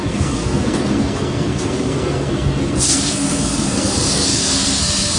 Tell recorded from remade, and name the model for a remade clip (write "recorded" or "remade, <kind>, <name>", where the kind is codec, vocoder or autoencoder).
remade, codec, SNAC